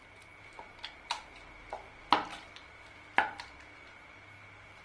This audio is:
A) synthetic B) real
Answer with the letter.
B